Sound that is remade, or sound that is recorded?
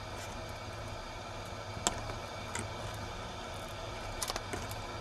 recorded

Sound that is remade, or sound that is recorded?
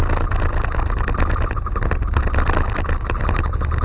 recorded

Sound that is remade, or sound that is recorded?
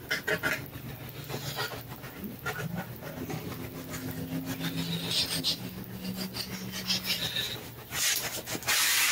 recorded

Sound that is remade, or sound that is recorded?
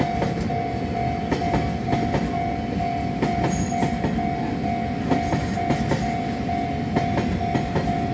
recorded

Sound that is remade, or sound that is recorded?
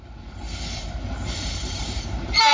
remade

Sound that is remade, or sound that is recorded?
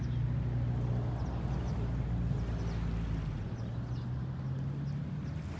recorded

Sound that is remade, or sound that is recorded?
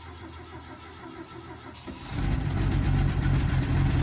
recorded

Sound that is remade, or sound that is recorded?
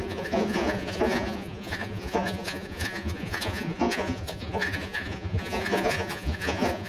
remade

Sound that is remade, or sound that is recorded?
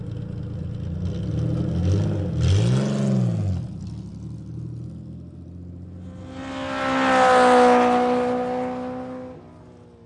recorded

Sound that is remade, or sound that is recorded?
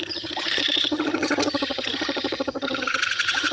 remade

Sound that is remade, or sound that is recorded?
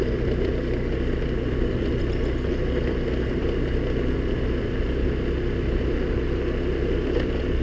recorded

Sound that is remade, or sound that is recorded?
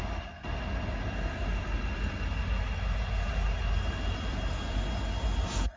recorded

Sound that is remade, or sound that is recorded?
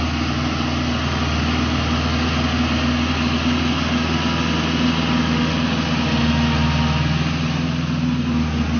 recorded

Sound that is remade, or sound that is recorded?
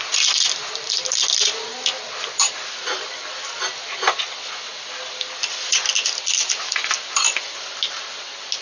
recorded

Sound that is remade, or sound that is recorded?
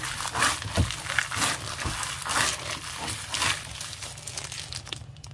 recorded